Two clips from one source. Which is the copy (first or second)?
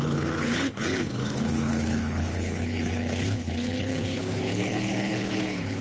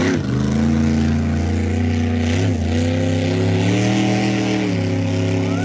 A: first